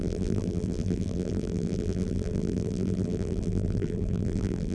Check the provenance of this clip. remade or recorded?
remade